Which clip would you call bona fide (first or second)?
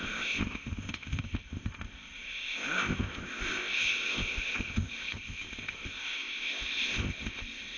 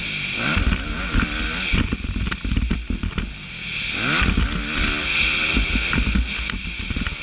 second